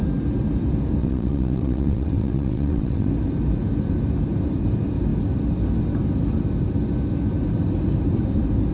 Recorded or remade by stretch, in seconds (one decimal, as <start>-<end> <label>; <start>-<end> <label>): 0.0-1.0 recorded; 1.0-3.1 remade; 3.1-8.7 recorded